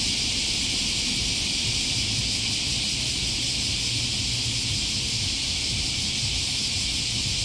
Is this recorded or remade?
recorded